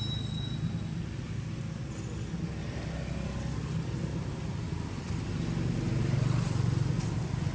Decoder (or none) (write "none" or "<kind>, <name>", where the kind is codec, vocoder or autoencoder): none